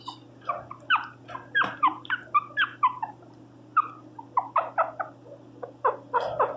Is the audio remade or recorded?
remade